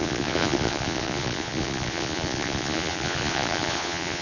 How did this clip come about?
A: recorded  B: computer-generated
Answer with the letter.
B